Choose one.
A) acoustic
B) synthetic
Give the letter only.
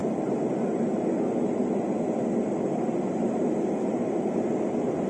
A